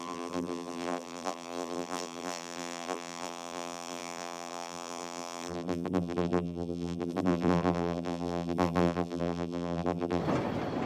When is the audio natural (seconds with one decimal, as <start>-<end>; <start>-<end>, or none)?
10.2-10.9